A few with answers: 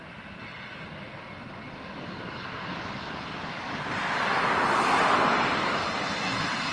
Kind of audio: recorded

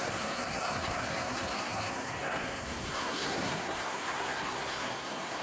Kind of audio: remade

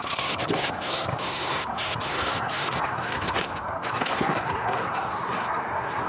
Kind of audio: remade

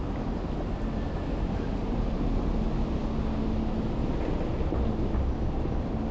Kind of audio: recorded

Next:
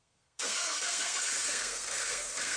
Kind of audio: remade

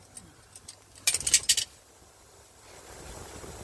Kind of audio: recorded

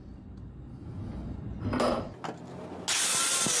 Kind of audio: recorded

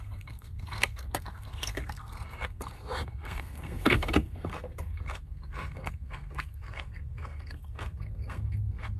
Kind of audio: remade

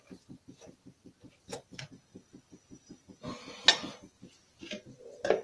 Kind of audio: recorded